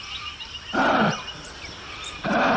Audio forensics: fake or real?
real